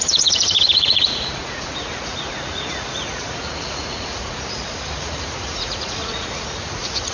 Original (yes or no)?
no